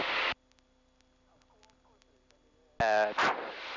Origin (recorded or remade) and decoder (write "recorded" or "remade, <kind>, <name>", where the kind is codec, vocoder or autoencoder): recorded